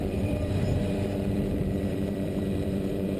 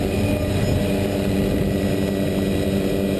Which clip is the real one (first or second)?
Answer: second